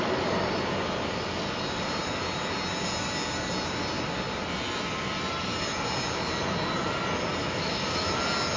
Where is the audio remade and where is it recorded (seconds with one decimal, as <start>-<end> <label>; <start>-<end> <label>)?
0.0-7.4 recorded; 7.4-8.1 remade; 8.1-8.6 recorded